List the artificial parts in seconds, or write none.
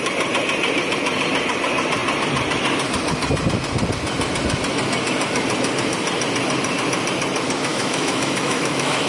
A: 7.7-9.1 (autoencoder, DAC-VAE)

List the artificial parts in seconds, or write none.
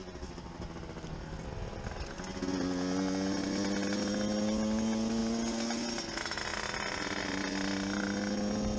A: none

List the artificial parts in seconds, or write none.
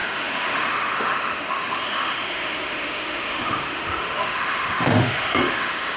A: 0.0-6.0 (autoencoder, DAC-VAE)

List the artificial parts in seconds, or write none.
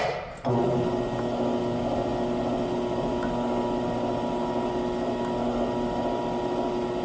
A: none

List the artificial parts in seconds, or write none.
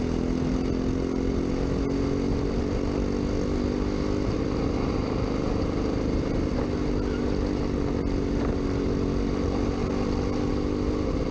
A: none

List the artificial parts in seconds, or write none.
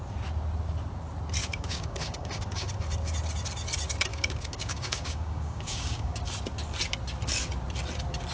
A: 1.4-2.7 (codec, DAC); 4.1-6.2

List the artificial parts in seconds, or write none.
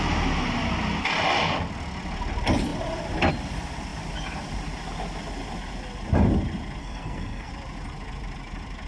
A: 6.8-7.5 (codec, SNAC)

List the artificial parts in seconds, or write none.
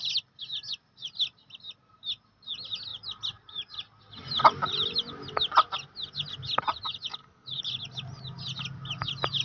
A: 7.2-7.7 (codec, HILCodec)